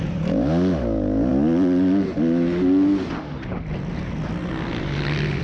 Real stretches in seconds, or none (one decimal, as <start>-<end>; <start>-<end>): 0.0-5.4